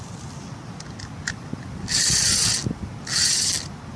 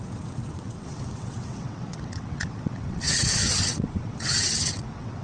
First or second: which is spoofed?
second